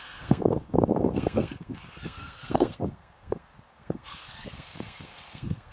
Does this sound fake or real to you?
fake